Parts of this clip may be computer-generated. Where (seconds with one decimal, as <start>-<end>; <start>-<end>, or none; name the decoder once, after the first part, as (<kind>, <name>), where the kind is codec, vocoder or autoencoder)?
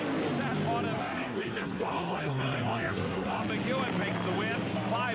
1.0-3.4 (codec, SNAC)